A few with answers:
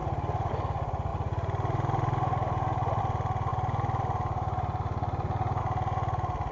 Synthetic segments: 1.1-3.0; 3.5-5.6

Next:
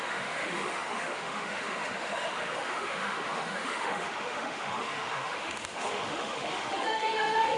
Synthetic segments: 0.0-7.6

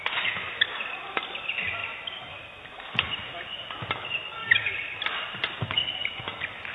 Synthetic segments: none